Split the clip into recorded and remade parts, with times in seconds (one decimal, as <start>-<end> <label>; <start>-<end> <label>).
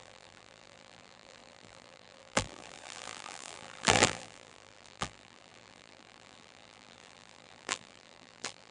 0.0-8.7 remade